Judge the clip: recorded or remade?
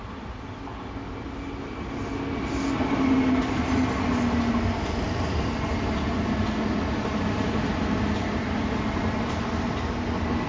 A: recorded